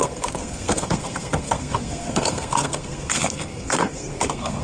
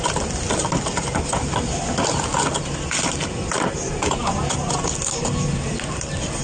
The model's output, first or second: first